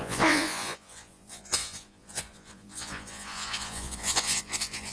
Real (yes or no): no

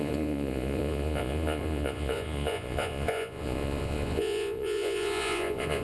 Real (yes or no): no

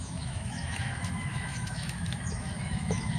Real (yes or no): no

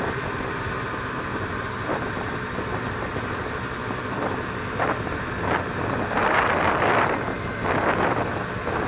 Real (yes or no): yes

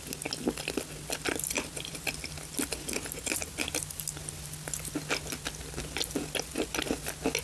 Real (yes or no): yes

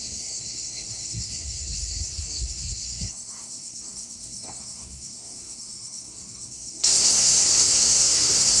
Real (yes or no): no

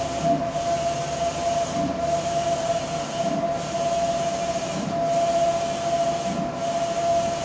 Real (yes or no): yes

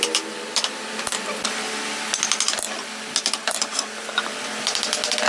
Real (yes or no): yes